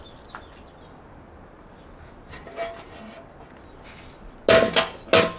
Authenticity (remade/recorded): recorded